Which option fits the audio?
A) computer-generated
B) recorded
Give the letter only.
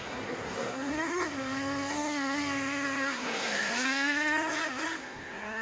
A